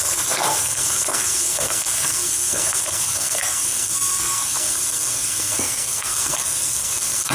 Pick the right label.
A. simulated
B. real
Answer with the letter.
A